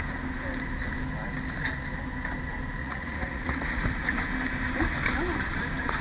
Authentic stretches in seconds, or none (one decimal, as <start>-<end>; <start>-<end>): 0.0-2.8; 3.8-6.0